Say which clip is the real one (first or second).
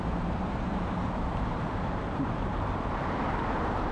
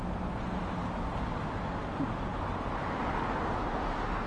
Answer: second